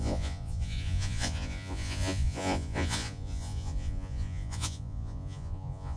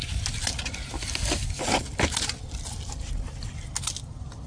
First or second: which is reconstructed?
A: first